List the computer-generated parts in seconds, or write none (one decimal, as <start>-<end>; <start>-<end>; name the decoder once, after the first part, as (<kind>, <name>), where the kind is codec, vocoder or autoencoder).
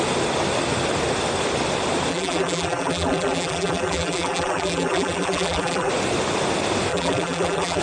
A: 2.1-5.9 (vocoder, BigVGAN v2); 6.9-7.8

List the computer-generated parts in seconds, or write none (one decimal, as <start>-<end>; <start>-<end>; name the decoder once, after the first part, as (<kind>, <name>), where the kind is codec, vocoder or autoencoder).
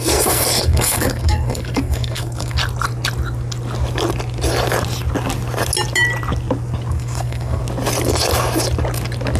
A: 0.0-2.6 (codec, SNAC); 6.9-7.6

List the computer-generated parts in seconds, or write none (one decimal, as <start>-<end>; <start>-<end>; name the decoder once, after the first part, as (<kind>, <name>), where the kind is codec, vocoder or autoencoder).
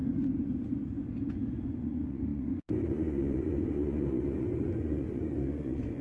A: 1.3-6.0 (vocoder, Vocos)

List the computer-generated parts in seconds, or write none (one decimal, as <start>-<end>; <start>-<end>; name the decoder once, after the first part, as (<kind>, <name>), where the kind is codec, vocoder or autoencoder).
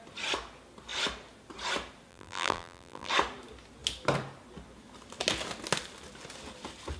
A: 2.1-3.1 (vocoder, BigVGAN v2)